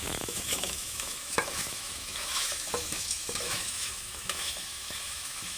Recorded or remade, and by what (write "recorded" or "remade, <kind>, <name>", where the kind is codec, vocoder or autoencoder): remade, autoencoder, DAC-VAE